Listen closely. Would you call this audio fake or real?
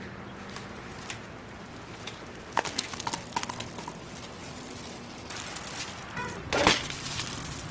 real